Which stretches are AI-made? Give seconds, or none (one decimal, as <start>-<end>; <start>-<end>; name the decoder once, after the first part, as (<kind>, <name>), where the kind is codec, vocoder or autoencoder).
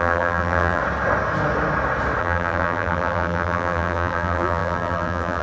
0.0-0.8 (vocoder, BigVGAN v2); 2.2-5.4